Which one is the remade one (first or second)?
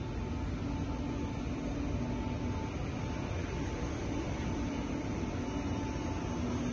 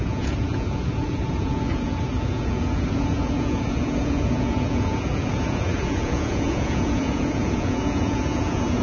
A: second